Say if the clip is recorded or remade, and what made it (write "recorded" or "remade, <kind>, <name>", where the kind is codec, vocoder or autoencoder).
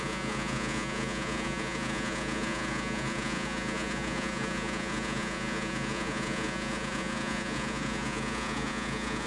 remade, vocoder, Vocos